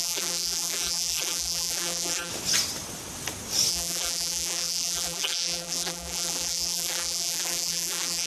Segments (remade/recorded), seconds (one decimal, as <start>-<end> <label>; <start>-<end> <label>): 0.0-2.3 remade; 2.3-3.7 recorded; 3.7-8.3 remade